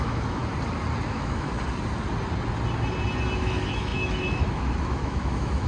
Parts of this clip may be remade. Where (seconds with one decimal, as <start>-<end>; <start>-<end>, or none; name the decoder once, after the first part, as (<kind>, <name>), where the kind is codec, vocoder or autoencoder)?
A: 0.0-0.4 (autoencoder, DAC-VAE); 1.1-1.5; 3.4-5.7